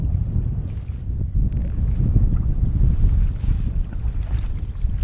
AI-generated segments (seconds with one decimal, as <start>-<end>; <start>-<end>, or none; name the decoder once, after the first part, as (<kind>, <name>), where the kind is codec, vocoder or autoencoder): 1.6-2.3 (autoencoder, DAC-VAE)